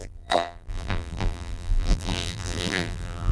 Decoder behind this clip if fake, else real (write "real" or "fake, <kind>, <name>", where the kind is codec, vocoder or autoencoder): fake, vocoder, BigVGAN v2